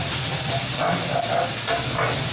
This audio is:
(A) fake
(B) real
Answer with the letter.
B